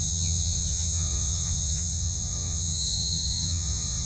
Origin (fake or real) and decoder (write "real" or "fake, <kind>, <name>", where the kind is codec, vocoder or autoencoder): fake, vocoder, WaveNeXt